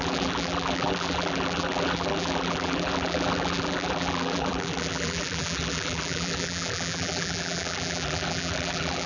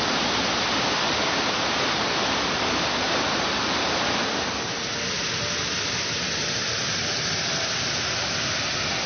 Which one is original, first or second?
second